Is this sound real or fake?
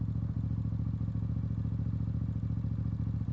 real